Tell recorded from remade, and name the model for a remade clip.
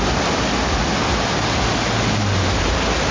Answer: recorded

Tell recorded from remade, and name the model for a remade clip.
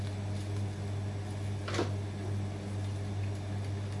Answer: recorded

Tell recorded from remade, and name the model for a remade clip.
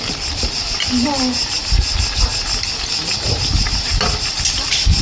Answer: recorded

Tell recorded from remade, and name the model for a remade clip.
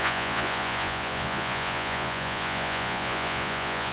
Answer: remade, vocoder, Vocos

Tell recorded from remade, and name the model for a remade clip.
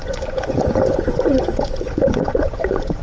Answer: remade, vocoder, Vocos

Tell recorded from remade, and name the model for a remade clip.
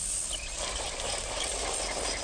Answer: recorded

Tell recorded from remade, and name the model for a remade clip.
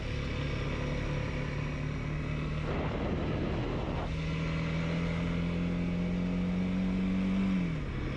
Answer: recorded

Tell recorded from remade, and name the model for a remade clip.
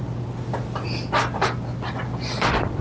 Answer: recorded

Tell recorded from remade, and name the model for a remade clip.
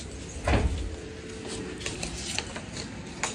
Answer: recorded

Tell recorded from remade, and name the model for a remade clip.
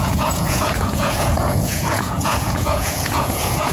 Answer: remade, vocoder, Vocos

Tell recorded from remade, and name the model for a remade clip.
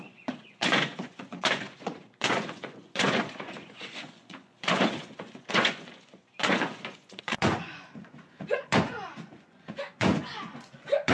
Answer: remade, vocoder, Vocos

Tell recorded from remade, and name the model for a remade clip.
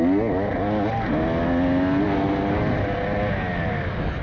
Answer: recorded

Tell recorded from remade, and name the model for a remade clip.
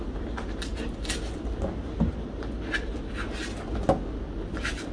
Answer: recorded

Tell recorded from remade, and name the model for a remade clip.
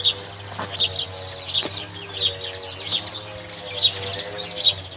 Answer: recorded